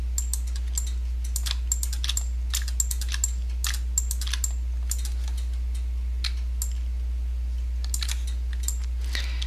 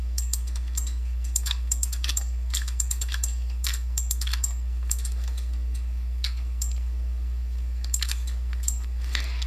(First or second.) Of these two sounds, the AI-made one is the second